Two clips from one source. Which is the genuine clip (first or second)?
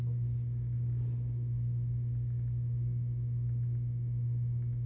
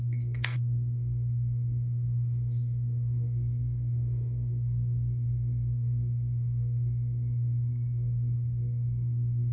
first